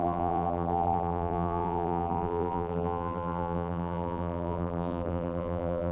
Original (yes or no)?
no